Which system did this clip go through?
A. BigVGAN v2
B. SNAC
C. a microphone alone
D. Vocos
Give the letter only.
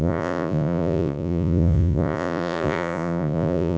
D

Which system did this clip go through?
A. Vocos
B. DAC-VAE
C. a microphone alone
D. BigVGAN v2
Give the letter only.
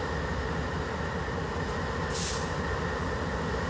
C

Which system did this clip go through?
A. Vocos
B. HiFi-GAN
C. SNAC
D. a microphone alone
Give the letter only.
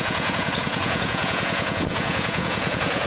A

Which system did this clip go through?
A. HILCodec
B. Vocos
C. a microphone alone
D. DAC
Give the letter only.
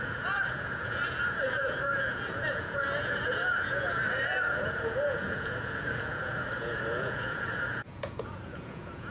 B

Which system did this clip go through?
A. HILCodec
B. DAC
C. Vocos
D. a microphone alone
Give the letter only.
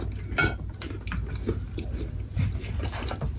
D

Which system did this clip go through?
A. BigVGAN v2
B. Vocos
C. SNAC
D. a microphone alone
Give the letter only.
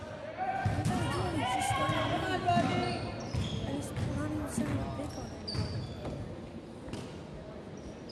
D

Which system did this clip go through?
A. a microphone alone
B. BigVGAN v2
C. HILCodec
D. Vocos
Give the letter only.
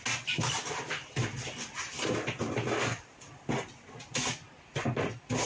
A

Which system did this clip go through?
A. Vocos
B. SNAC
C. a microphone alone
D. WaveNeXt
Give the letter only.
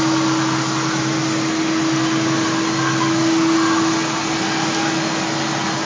C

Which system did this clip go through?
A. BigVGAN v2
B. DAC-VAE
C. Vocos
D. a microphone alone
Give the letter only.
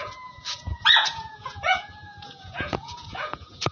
C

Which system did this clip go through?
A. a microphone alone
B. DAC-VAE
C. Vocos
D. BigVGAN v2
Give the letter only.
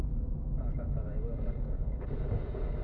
C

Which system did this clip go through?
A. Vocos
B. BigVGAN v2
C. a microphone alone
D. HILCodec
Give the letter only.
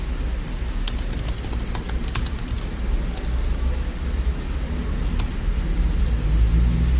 C